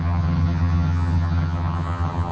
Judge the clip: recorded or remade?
remade